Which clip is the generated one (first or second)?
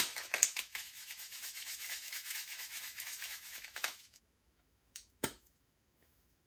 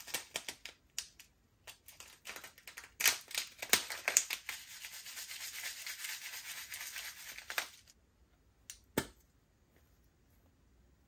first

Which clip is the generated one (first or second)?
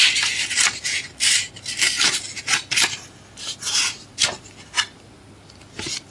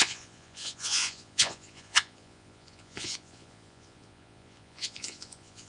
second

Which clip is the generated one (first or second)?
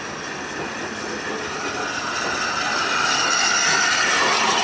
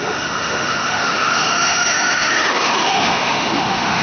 second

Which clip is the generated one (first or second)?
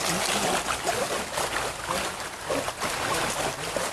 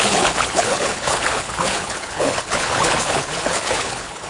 second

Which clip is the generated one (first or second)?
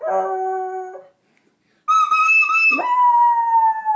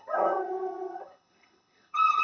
second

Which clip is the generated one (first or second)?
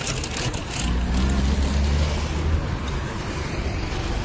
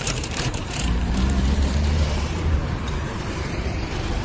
second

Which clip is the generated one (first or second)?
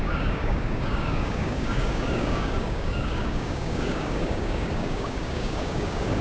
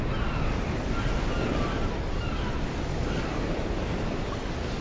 first